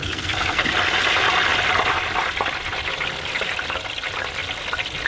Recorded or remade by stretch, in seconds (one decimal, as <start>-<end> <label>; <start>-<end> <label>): 0.0-0.7 remade; 0.7-5.1 recorded